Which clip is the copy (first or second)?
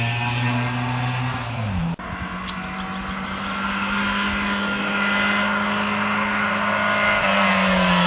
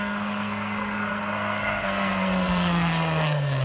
second